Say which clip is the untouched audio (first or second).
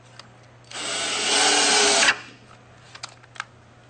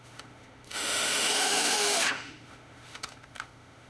first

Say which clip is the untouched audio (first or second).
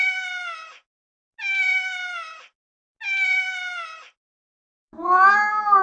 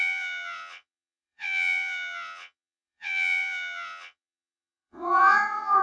first